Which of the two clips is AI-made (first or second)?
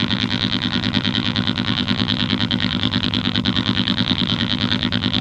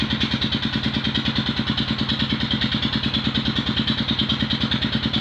first